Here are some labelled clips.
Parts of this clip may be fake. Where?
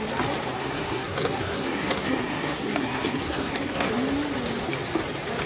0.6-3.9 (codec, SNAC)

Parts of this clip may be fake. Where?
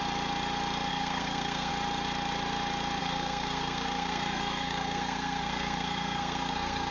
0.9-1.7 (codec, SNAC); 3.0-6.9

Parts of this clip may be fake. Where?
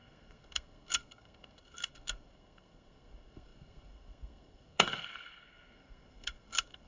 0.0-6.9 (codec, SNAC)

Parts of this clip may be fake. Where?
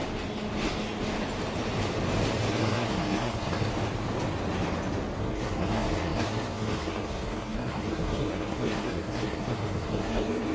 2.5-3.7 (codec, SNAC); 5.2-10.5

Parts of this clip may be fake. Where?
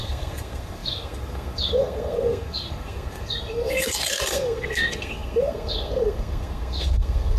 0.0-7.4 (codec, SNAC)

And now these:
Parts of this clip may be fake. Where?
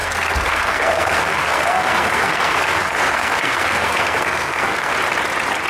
0.0-4.9 (codec, SNAC)